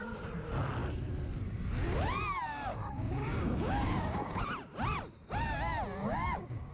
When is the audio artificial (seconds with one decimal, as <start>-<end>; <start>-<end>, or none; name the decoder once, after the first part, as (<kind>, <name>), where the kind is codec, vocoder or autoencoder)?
2.7-4.4 (codec, DAC); 6.0-6.7